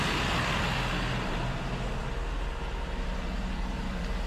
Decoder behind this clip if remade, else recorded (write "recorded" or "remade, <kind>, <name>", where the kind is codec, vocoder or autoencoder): recorded